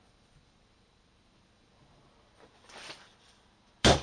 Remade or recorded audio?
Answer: remade